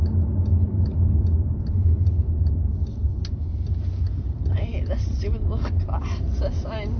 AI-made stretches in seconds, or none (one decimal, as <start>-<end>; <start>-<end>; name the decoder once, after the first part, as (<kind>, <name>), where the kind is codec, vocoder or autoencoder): none